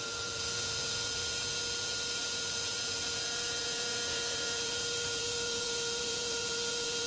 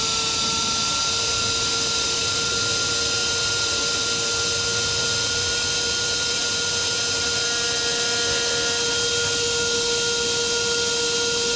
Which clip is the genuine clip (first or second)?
second